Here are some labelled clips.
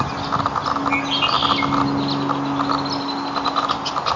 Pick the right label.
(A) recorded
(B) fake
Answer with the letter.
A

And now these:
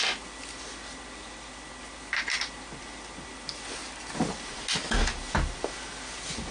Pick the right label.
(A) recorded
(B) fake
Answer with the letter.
A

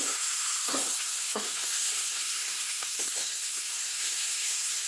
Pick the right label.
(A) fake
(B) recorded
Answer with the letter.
A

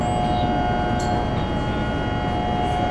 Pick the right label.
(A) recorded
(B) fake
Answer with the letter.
A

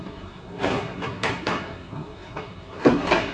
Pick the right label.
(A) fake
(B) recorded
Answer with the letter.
A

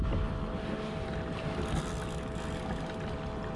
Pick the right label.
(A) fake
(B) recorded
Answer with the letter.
B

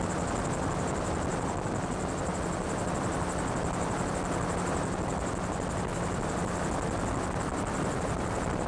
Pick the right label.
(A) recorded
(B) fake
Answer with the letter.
A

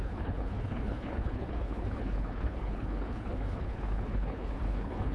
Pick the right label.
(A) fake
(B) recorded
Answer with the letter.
A